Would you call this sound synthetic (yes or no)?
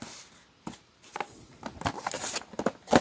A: no